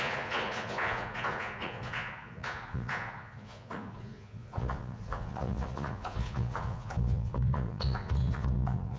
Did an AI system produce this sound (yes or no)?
yes